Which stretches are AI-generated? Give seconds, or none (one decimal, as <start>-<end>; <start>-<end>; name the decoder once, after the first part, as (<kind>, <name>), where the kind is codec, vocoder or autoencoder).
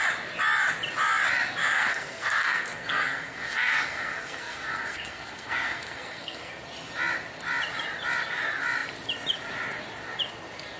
1.6-6.5 (codec, SNAC)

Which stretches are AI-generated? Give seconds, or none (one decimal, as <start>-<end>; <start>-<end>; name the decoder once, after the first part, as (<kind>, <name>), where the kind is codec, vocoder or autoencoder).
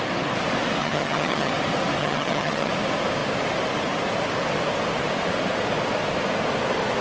0.8-1.5 (vocoder, HiFi-GAN); 2.0-2.7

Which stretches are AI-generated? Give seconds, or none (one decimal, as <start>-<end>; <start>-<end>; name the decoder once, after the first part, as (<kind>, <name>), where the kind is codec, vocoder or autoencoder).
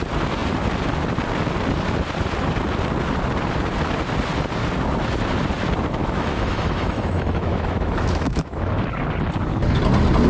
6.0-8.7 (autoencoder, DAC-VAE)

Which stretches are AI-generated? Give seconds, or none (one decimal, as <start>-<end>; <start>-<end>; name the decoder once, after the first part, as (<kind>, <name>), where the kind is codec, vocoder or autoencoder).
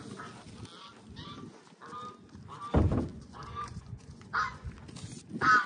3.1-4.7 (vocoder, Vocos)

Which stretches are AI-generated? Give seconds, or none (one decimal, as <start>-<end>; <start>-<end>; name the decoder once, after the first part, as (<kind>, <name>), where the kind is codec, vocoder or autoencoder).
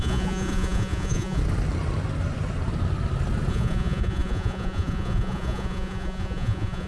0.0-1.4 (vocoder, Vocos); 3.5-6.9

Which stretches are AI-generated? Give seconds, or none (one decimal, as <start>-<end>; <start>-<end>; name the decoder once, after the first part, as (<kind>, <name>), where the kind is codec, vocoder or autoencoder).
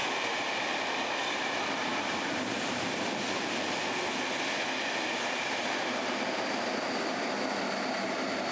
0.0-3.1 (vocoder, BigVGAN v2)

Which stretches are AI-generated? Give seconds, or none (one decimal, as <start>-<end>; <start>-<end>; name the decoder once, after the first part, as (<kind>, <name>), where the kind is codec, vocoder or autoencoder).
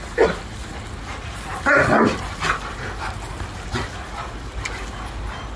none